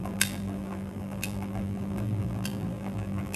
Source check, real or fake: fake